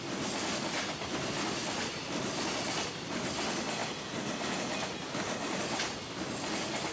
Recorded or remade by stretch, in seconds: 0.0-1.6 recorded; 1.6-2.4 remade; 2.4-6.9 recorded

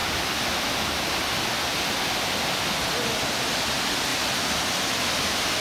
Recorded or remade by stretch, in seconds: 0.0-5.6 recorded

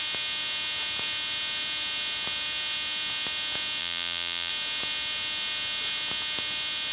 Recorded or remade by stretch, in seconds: 0.0-3.8 recorded; 3.8-4.5 remade; 4.5-6.9 recorded

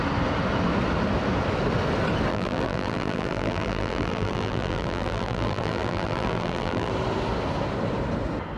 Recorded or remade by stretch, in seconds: 0.0-2.3 recorded; 2.3-6.9 remade; 6.9-8.6 recorded

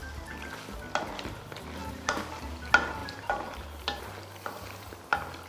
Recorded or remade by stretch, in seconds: 0.0-3.0 recorded; 3.0-4.0 remade; 4.0-5.5 recorded

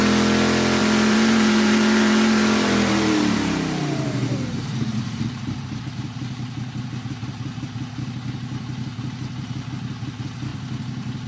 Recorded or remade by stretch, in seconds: 0.0-0.8 recorded; 0.8-5.8 remade; 5.8-11.3 recorded

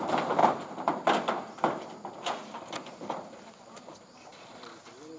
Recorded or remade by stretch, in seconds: 0.0-0.4 recorded; 0.4-3.5 remade; 3.5-4.3 recorded; 4.3-4.8 remade; 4.8-5.2 recorded

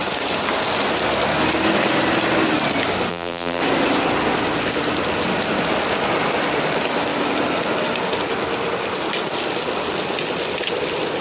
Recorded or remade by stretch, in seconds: 0.0-3.1 recorded; 3.1-3.6 remade; 3.6-11.2 recorded